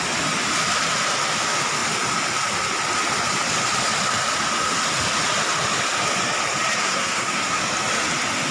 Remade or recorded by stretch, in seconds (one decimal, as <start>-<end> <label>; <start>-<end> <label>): 0.0-6.8 recorded; 6.8-7.6 remade; 7.6-8.5 recorded